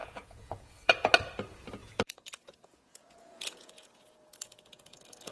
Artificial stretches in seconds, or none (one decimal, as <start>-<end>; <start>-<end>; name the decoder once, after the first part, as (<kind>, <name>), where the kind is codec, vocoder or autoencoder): 0.0-1.1 (vocoder, Vocos); 1.8-5.3